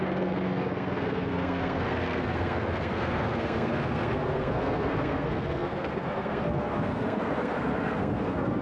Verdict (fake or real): fake